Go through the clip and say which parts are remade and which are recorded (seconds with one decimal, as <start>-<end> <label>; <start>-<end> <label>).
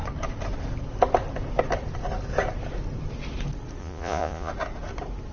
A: 0.0-3.8 recorded; 3.8-4.5 remade; 4.5-5.3 recorded